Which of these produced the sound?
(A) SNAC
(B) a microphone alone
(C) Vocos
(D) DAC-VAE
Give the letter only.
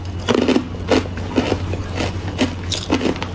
B